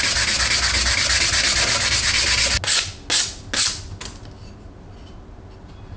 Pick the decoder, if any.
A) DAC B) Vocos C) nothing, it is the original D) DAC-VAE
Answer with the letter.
C